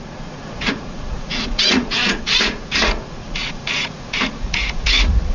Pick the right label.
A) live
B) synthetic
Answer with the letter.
B